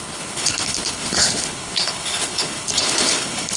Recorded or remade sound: remade